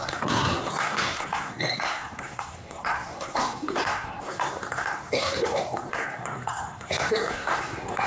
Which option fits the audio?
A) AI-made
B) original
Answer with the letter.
A